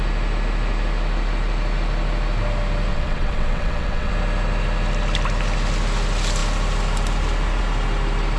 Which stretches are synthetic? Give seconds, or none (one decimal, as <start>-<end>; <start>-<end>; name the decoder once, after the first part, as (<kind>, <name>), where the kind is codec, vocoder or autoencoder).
2.9-4.1 (vocoder, WaveNeXt)